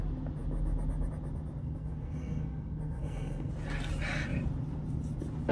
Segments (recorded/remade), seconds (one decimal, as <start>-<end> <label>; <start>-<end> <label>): 0.0-1.6 recorded; 1.6-3.5 remade; 3.5-5.5 recorded